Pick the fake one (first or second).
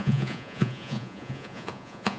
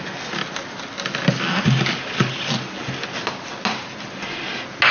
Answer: first